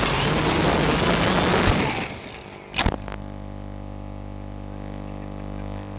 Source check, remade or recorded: recorded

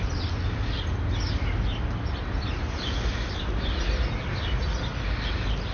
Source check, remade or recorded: recorded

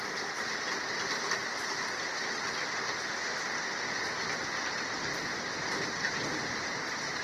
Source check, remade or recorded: recorded